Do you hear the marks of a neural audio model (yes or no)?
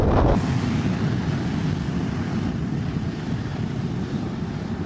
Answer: no